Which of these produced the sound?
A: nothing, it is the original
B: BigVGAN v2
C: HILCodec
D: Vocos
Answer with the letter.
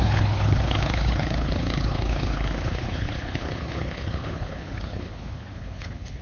C